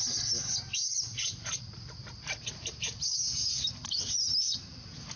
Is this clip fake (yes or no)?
no